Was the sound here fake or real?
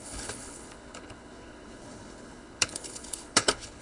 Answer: fake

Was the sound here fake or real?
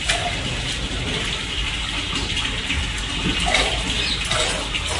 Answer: real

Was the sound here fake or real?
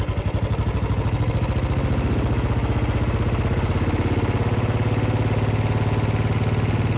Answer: real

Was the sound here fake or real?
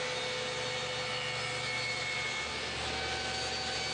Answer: real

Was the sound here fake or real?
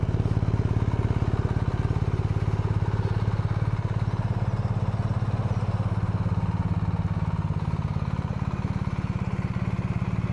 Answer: real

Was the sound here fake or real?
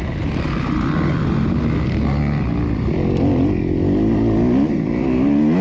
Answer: real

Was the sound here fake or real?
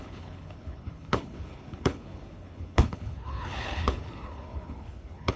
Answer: fake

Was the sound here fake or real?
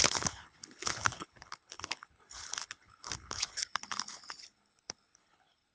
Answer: fake